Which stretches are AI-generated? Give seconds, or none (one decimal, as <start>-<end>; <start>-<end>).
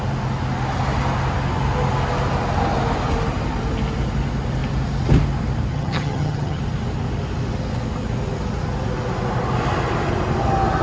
5.7-6.6